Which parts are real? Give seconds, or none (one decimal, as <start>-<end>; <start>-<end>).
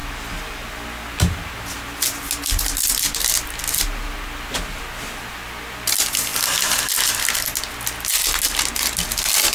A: 0.0-9.5